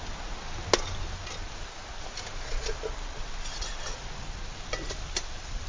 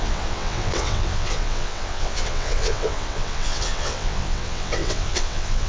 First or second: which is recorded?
first